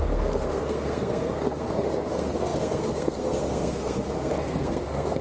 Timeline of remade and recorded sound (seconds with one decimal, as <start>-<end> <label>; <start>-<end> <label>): 0.0-5.2 remade